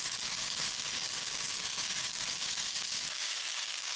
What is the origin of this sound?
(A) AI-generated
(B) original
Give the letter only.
A